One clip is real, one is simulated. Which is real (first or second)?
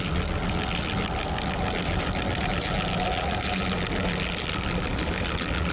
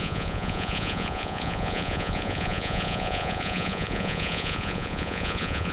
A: first